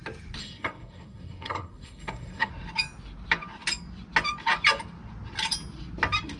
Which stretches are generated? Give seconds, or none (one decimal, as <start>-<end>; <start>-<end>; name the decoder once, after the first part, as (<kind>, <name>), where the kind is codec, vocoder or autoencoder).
0.4-2.5 (codec, SNAC)